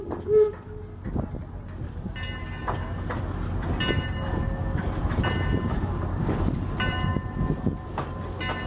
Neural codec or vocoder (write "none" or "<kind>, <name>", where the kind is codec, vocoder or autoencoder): none